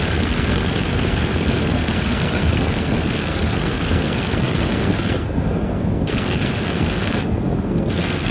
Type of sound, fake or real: fake